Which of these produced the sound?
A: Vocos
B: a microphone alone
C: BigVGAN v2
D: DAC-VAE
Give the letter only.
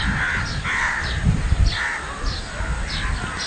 B